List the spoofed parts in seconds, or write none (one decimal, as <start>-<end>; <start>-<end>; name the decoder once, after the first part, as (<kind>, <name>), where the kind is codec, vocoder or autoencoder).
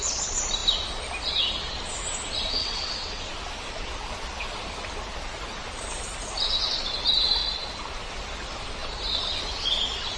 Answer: 2.6-3.3 (vocoder, WaveNeXt)